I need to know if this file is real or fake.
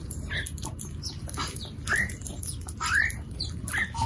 real